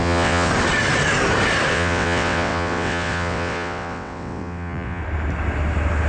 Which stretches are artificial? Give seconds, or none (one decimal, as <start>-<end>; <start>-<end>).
0.0-0.5; 1.7-5.0